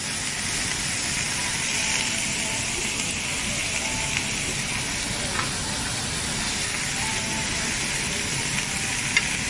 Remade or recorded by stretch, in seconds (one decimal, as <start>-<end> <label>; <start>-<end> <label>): 0.0-3.6 remade; 3.6-5.8 recorded; 5.8-7.1 remade; 7.1-7.7 recorded; 7.7-9.5 remade